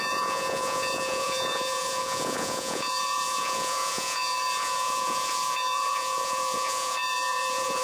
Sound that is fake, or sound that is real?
fake